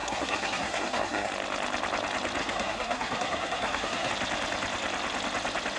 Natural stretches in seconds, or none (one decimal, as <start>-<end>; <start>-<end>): 1.3-2.4; 4.1-5.8